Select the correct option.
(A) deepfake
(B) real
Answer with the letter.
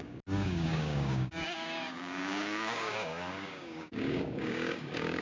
A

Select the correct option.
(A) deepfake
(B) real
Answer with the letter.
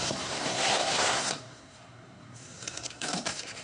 A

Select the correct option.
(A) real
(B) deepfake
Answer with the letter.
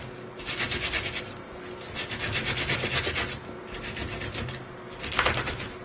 A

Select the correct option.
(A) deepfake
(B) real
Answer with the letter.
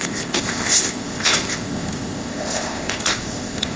A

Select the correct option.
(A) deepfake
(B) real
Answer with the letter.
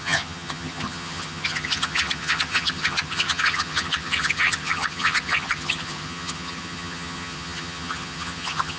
A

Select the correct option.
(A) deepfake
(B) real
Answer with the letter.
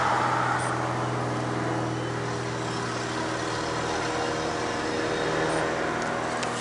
B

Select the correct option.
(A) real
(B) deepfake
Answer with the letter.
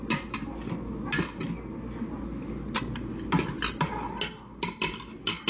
A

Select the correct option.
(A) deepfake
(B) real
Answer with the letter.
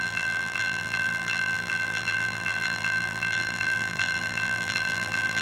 A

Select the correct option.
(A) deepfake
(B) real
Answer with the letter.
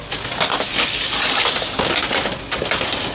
B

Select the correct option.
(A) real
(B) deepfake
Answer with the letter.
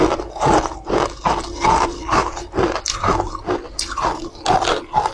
A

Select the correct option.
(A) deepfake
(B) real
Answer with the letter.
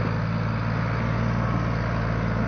B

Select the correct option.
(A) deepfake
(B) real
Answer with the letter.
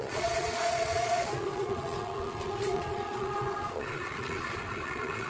A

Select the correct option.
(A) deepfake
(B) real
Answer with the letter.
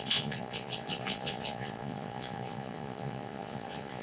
A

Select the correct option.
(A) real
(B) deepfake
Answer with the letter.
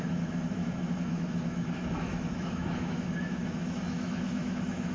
B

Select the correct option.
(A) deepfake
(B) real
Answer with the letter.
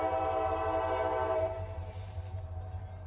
A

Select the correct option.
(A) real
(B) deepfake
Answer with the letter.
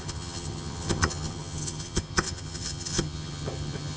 B